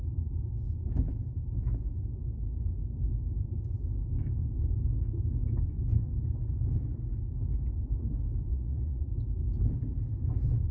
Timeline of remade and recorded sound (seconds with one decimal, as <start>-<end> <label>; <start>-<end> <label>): 0.0-8.5 recorded; 8.5-9.1 remade; 9.1-10.7 recorded